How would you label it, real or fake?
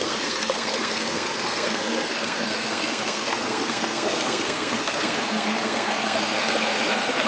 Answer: fake